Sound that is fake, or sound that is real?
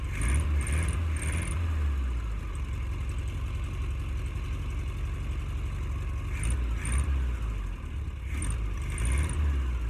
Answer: real